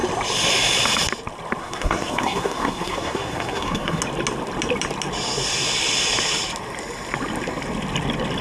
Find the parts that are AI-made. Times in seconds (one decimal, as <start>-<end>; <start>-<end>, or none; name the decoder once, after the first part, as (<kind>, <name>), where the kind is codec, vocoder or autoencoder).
1.6-4.0 (codec, SNAC)